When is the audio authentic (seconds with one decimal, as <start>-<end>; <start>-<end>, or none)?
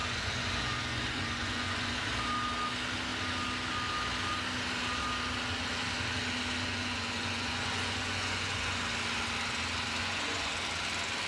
2.0-6.7; 8.8-10.0; 10.5-11.3